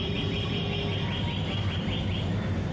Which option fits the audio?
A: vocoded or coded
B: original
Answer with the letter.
B